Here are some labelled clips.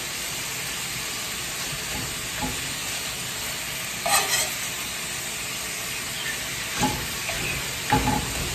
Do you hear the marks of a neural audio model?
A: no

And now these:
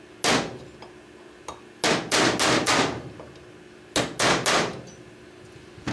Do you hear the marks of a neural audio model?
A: no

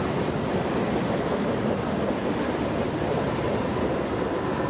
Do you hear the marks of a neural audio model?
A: no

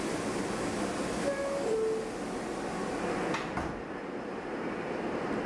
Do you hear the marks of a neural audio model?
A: no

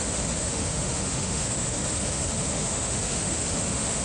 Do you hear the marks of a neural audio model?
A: yes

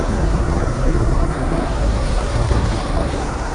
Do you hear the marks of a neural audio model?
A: yes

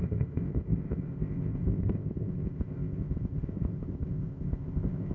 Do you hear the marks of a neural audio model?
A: yes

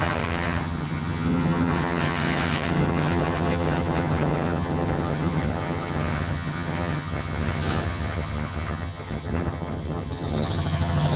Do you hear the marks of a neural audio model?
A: yes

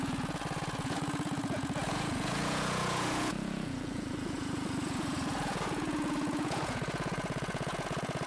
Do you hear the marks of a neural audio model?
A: yes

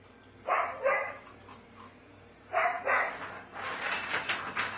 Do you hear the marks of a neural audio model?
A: no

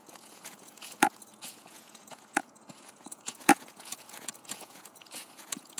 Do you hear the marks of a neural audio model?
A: yes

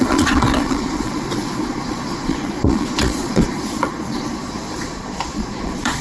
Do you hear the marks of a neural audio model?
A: yes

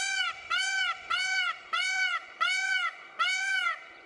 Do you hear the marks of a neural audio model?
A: yes